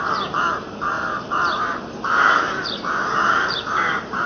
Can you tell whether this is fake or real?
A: fake